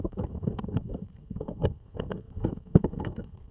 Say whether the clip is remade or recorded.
remade